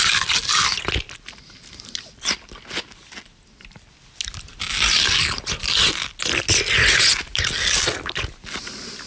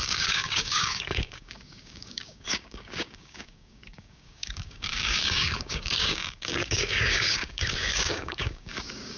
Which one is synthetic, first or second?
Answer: second